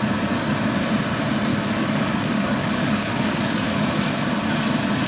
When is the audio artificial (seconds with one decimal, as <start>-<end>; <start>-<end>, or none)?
1.5-4.6